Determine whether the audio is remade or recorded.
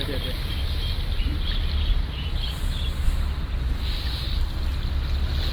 recorded